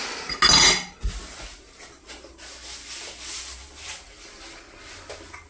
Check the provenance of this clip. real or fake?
real